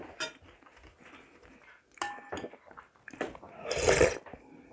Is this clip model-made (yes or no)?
no